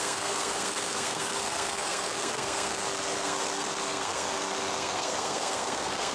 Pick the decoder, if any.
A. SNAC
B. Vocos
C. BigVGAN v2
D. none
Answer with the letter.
A